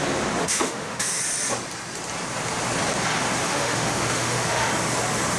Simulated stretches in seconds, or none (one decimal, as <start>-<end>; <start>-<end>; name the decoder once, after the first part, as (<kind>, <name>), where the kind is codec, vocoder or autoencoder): 0.4-1.2 (autoencoder, DAC-VAE); 3.4-4.7

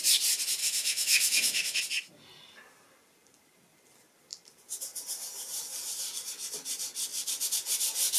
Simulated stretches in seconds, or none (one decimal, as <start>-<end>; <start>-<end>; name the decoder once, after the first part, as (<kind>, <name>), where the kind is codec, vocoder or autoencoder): 0.6-1.8 (autoencoder, DAC-VAE)

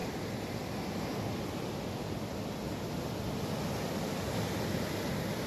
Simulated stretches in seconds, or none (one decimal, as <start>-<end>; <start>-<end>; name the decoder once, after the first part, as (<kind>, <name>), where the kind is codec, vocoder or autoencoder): none

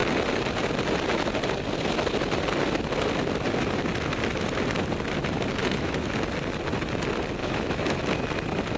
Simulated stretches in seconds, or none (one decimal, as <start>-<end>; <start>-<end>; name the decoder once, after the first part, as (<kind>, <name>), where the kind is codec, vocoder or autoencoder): 5.6-6.1 (autoencoder, DAC-VAE); 7.4-8.0

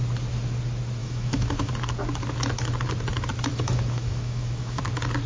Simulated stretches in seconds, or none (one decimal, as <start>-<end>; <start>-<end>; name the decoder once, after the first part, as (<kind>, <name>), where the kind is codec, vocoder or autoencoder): 1.0-1.7 (autoencoder, DAC-VAE); 3.5-4.8

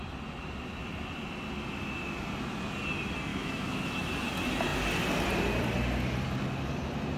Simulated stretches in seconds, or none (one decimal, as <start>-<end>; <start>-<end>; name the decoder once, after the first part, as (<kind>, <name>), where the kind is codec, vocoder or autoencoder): 3.3-4.1 (autoencoder, DAC-VAE)

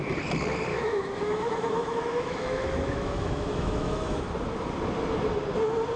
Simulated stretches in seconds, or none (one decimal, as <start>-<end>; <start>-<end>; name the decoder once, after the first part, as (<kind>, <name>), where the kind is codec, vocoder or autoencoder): 0.7-4.3 (autoencoder, DAC-VAE)